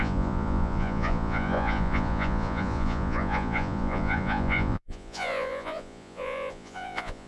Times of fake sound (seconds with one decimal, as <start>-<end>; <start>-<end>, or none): 0.0-7.3

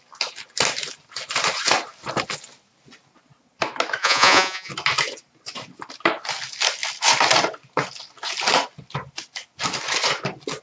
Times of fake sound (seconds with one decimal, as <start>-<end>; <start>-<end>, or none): 4.0-4.7

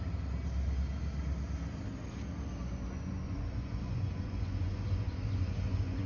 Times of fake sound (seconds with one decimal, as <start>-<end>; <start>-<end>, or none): 2.6-6.1

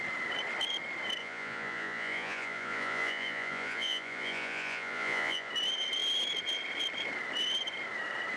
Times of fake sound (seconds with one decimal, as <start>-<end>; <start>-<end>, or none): 1.2-5.5

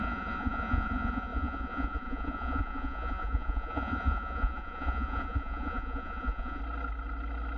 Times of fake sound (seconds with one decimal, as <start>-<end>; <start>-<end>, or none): 0.0-6.6